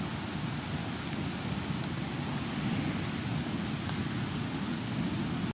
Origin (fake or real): real